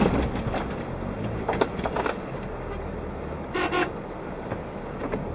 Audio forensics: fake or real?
real